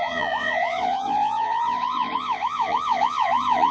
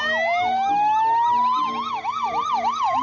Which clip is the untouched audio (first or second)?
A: second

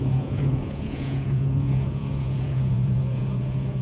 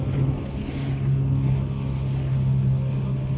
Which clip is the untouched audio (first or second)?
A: second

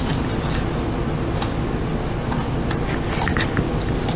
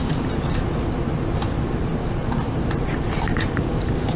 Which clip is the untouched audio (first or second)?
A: first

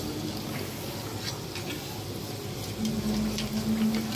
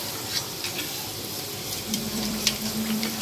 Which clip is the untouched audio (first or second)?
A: first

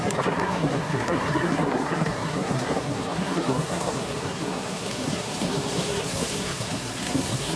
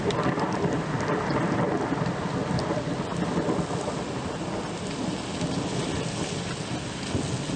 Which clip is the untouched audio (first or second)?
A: second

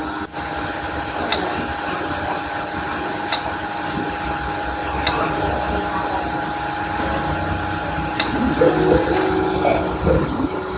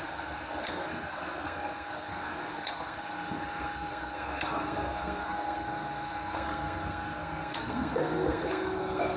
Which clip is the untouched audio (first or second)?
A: first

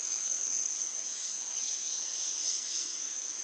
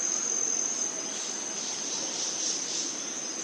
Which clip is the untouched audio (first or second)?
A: second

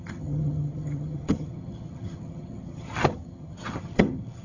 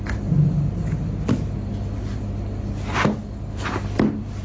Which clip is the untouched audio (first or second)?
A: second